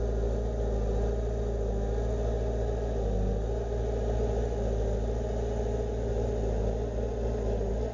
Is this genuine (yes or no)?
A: yes